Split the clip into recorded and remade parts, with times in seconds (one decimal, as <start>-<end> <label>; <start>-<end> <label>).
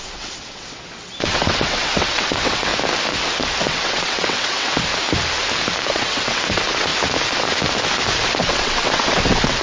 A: 0.0-2.7 remade; 2.7-3.6 recorded; 3.6-4.9 remade; 4.9-5.9 recorded; 5.9-6.9 remade; 6.9-8.4 recorded; 8.4-9.6 remade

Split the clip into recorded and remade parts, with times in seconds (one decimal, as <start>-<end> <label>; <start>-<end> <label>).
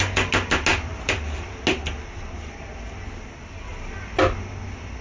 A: 0.0-5.0 recorded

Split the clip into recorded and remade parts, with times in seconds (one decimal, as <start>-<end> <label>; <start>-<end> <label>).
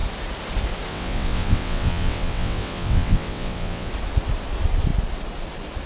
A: 0.0-0.9 recorded; 0.9-3.9 remade; 3.9-5.9 recorded